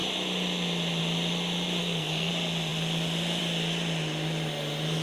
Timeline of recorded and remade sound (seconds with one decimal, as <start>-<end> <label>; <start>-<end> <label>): 0.0-1.8 recorded; 1.8-2.3 remade; 2.3-5.0 recorded